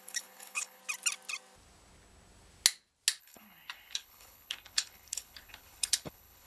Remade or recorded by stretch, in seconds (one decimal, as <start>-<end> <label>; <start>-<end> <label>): 0.0-0.8 remade; 0.8-3.2 recorded; 3.2-6.5 remade